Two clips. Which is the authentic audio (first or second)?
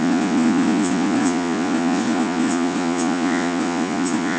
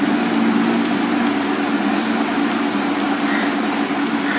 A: second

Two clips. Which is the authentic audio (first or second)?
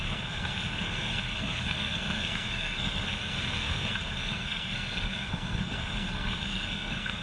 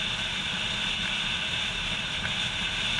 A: second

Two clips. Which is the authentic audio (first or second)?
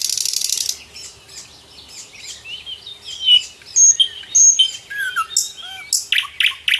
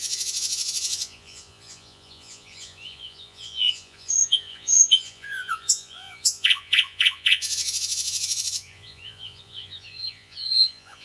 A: first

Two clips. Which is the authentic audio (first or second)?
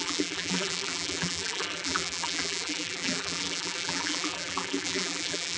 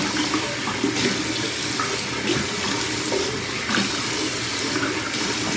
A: second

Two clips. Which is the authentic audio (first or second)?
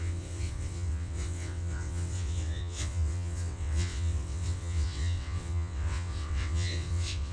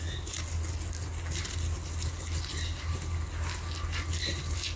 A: second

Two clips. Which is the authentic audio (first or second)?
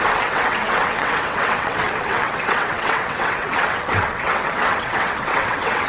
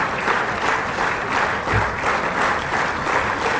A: second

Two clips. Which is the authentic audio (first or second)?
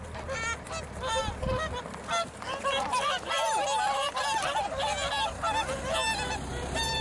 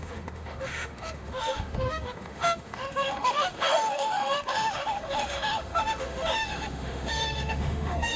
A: first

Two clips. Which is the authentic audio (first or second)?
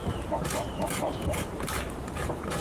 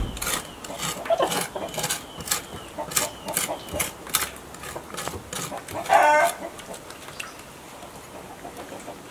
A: second